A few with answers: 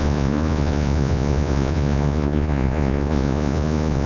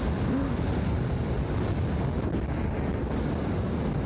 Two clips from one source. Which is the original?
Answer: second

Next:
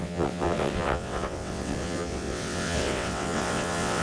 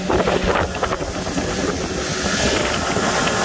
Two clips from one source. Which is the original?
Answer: second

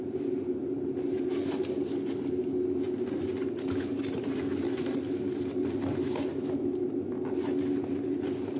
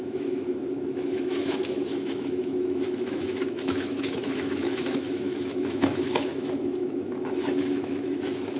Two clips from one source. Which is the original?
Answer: first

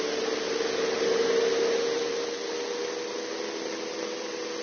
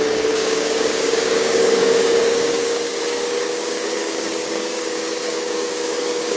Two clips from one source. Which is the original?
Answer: first